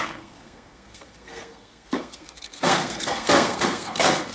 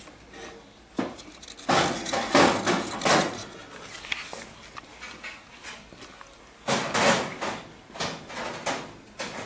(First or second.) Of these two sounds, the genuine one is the second